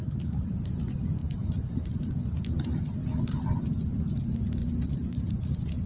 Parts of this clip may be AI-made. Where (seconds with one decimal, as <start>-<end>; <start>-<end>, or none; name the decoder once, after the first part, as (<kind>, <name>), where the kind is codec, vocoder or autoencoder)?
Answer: 1.2-2.0 (vocoder, BigVGAN v2); 3.0-4.1